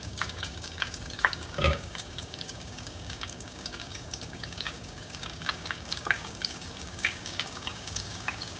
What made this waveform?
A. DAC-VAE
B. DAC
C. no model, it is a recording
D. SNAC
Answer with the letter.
B